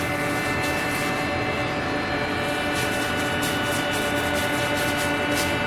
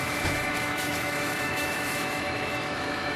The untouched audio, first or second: first